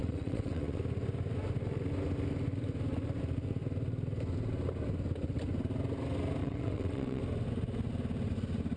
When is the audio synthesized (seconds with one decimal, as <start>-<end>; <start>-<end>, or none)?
0.0-0.8; 6.4-7.2